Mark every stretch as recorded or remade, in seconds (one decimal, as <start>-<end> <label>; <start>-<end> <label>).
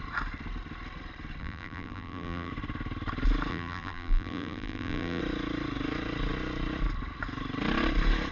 0.0-1.4 recorded; 1.4-2.5 remade; 2.5-3.5 recorded; 3.5-5.2 remade; 5.2-8.3 recorded